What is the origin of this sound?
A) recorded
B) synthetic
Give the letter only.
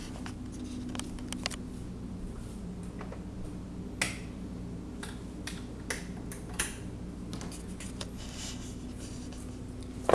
A